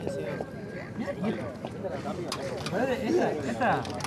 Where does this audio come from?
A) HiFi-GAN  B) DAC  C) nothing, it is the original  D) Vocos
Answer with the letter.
C